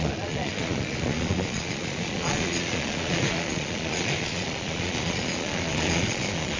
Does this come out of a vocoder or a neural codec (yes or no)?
yes